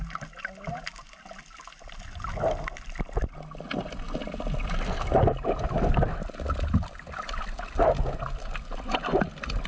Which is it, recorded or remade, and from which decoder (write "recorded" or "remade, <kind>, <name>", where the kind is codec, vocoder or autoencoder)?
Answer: recorded